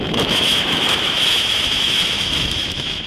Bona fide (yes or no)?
no